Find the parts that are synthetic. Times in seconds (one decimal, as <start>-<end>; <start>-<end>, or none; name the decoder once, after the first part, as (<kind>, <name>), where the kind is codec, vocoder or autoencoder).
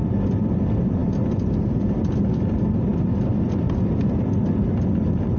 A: none